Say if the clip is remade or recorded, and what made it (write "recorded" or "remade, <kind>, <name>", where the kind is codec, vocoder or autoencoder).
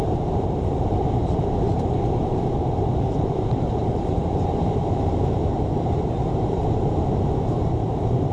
remade, vocoder, BigVGAN v2